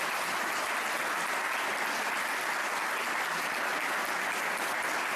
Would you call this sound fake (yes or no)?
no